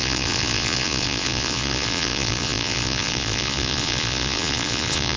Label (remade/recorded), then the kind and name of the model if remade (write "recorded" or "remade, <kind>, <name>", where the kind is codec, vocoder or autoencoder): remade, vocoder, Vocos